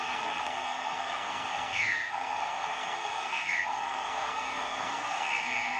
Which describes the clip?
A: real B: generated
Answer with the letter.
B